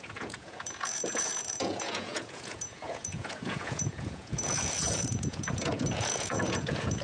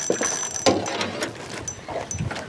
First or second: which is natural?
second